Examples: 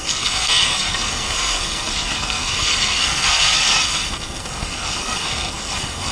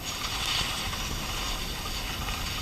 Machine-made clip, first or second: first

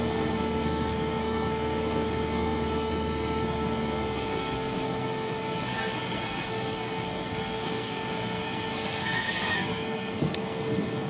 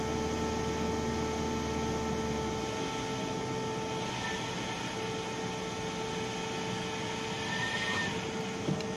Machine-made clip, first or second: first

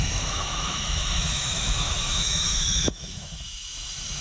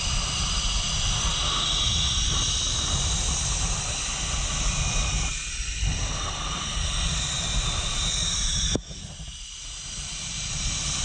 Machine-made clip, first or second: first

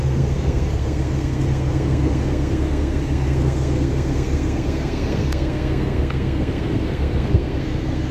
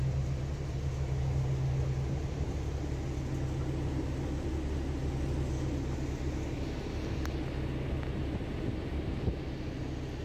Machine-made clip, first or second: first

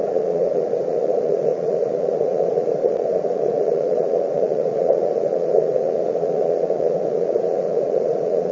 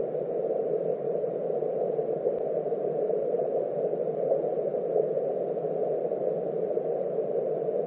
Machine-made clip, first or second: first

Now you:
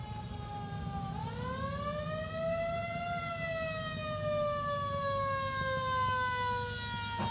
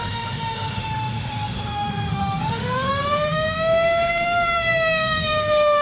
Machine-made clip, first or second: second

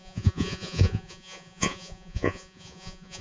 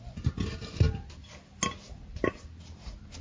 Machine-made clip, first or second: first